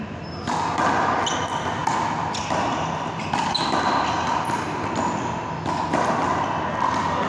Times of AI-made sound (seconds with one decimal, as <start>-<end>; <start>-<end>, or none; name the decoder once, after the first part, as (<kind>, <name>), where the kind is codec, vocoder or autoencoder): none